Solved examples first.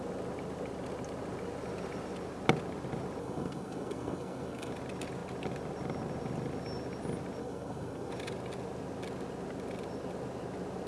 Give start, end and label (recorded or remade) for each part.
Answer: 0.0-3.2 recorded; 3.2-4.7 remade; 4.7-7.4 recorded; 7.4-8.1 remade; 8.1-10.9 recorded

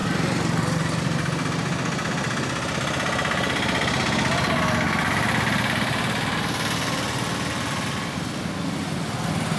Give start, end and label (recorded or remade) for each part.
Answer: 0.0-9.6 recorded

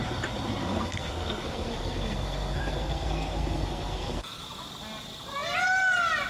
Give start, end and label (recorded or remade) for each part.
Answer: 0.0-0.6 recorded; 0.6-4.4 remade; 4.4-6.3 recorded

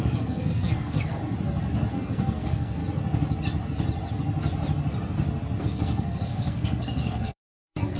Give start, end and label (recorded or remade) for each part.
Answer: 0.0-1.2 remade; 1.2-1.9 recorded; 1.9-2.8 remade; 2.8-5.6 recorded; 5.6-8.0 remade

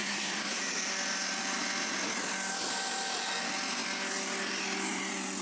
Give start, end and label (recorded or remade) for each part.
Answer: 0.0-0.6 remade; 0.6-5.4 recorded

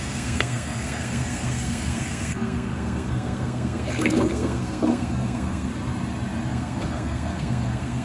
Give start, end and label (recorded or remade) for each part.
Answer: 0.0-5.7 remade; 5.7-6.5 recorded; 6.5-8.0 remade